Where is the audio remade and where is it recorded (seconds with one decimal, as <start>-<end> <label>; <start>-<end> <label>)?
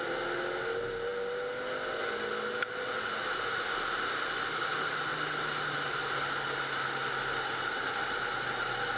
0.0-9.0 recorded